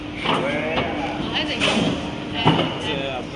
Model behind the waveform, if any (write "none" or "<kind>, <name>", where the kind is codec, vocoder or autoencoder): none